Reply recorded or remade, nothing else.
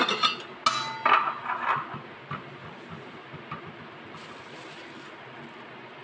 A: recorded